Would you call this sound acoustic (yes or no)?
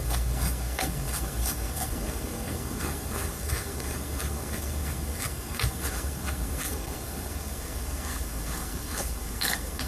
no